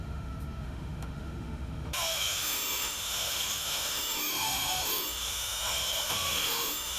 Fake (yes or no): yes